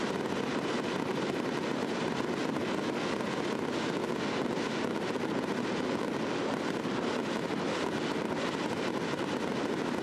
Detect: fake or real real